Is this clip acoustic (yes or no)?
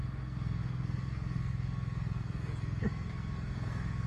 no